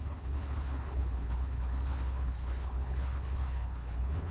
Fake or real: fake